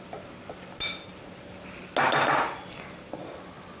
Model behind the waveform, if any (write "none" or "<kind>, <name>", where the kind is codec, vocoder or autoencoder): none